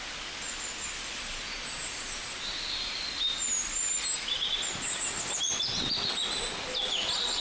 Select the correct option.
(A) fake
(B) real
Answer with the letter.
B